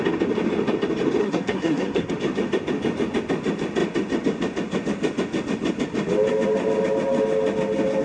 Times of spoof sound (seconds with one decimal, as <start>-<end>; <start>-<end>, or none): 1.2-2.1

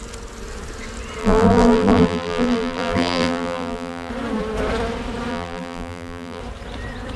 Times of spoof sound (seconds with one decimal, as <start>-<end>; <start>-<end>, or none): 1.2-4.1; 5.3-6.4

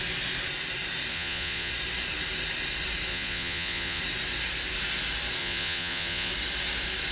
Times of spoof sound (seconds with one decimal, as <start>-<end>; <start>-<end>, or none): 1.1-1.7; 3.1-4.0; 5.4-6.3

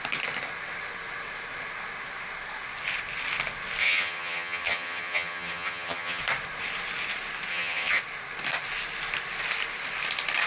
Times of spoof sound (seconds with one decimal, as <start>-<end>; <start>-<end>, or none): 3.8-6.2; 7.5-8.0